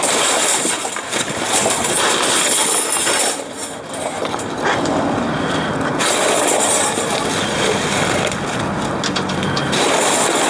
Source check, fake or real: real